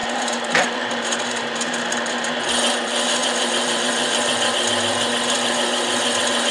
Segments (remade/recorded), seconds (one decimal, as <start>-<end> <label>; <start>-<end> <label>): 0.0-2.4 remade; 2.4-3.2 recorded; 3.2-4.5 remade; 4.5-6.5 recorded

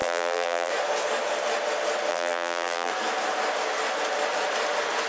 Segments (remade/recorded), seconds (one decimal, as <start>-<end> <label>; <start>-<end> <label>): 0.0-0.7 remade; 0.7-2.1 recorded; 2.1-2.9 remade; 2.9-5.1 recorded

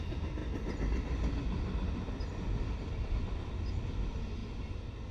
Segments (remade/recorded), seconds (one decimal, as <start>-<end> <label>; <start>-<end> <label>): 0.0-0.4 recorded; 0.4-3.5 remade; 3.5-5.1 recorded